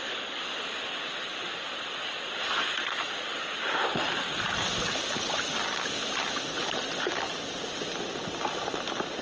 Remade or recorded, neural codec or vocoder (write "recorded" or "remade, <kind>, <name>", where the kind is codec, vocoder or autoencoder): recorded